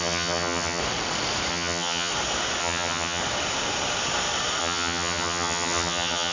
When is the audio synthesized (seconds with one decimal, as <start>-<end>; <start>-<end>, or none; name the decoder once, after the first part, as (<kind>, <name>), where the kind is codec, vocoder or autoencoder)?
0.0-0.8 (vocoder, HiFi-GAN); 1.5-2.1; 2.6-3.2; 4.6-6.3